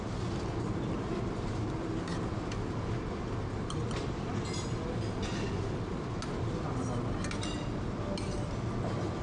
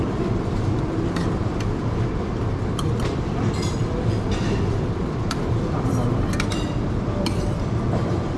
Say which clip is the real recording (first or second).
first